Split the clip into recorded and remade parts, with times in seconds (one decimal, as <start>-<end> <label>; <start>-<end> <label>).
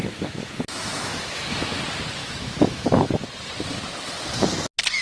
0.0-1.8 remade; 1.8-2.2 recorded; 2.2-3.1 remade; 3.1-5.0 recorded